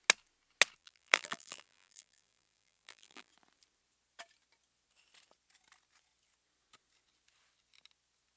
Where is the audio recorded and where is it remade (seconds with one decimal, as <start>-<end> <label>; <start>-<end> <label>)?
0.0-0.8 recorded; 0.8-3.3 remade; 3.3-8.4 recorded